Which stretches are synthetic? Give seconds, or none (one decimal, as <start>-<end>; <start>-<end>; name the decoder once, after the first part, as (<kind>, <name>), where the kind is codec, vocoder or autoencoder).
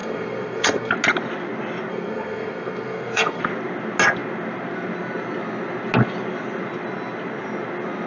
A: 0.0-0.9 (codec, SNAC); 1.9-3.4